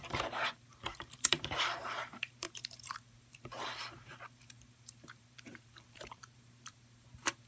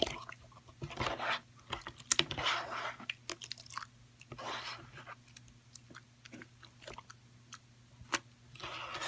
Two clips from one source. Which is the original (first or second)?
second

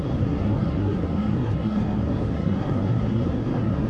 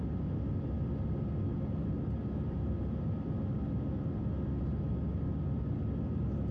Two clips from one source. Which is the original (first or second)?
second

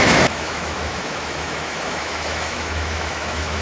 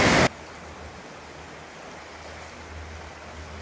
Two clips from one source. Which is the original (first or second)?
second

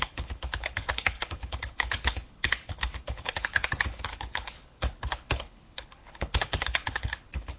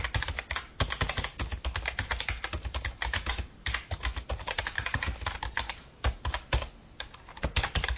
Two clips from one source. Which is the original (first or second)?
second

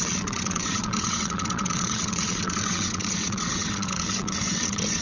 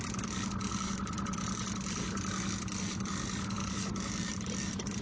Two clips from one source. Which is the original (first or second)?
second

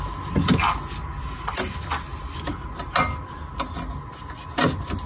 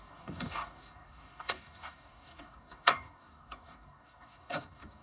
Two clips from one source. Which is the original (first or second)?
first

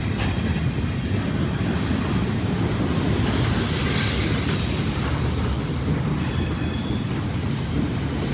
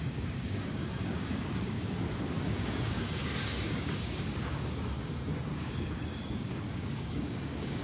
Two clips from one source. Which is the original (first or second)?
first